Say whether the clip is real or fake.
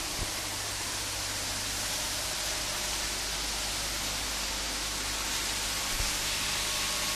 real